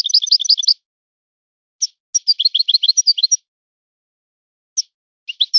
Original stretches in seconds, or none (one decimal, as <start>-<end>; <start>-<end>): 0.0-5.6